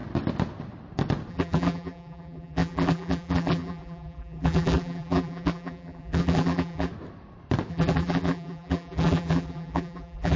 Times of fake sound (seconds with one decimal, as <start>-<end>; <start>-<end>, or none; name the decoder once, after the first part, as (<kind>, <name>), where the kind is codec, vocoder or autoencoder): 1.3-6.9 (vocoder, BigVGAN v2); 7.7-10.4